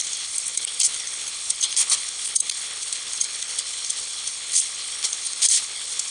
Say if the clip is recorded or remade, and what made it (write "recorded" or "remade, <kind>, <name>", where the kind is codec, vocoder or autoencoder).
remade, codec, HILCodec